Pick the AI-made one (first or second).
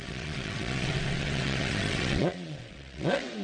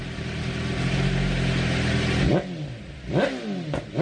first